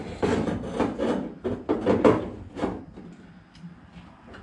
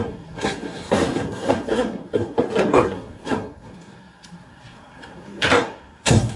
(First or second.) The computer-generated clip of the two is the second